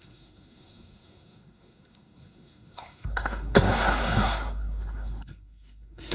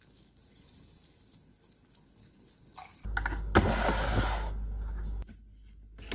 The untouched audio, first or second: second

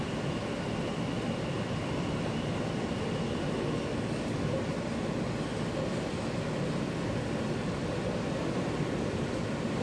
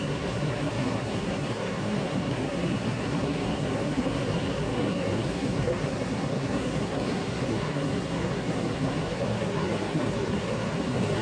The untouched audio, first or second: first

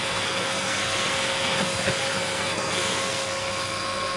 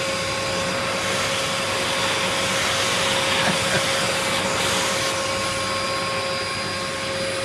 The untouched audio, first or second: second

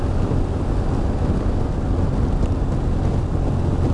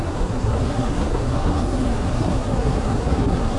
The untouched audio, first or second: first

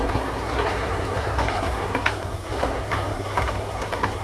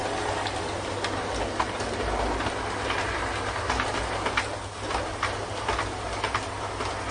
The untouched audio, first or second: second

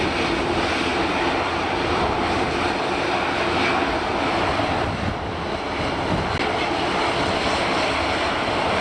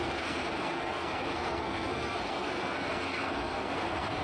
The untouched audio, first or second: first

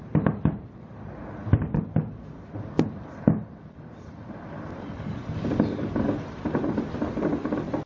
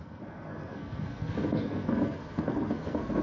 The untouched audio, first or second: first